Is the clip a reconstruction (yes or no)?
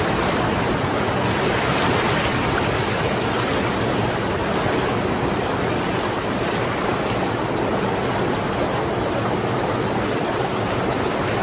no